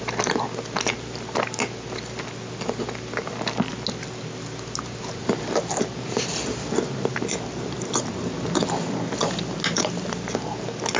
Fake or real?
real